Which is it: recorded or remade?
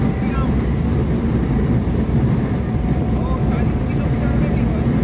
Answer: recorded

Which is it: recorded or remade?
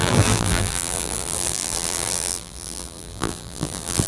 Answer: remade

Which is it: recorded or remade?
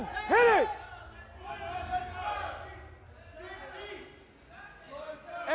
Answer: recorded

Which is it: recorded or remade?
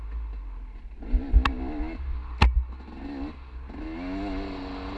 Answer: recorded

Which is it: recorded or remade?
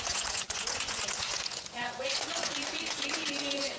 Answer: remade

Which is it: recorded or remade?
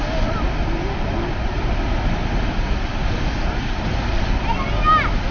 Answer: recorded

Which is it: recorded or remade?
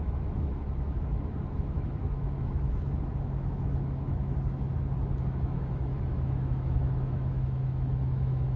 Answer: remade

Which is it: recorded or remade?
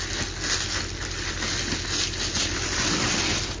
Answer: recorded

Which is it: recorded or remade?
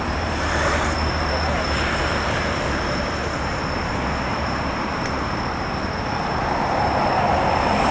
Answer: remade